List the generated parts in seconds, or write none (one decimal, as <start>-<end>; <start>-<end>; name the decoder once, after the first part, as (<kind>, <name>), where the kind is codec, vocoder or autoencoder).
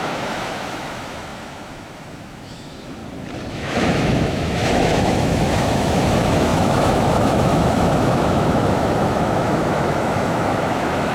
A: 0.0-3.0 (autoencoder, DAC-VAE); 3.5-11.1